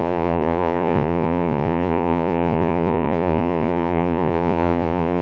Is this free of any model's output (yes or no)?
no